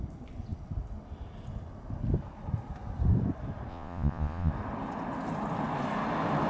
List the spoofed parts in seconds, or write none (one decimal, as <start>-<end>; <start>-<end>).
3.7-4.5